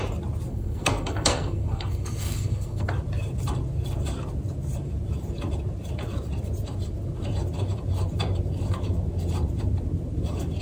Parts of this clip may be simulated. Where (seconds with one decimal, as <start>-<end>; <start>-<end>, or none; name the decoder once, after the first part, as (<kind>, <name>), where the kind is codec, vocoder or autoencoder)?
0.5-2.9 (codec, SNAC)